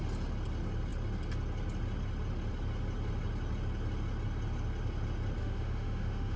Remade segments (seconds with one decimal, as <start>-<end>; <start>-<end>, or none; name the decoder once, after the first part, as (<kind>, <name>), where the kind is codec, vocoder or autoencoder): 5.4-6.4 (autoencoder, DAC-VAE)